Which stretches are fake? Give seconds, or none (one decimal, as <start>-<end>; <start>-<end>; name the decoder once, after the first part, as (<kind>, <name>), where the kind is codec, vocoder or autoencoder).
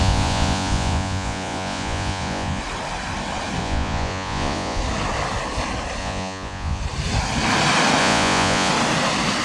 0.0-2.6 (vocoder, Vocos); 3.6-4.8; 6.0-6.8; 8.0-8.7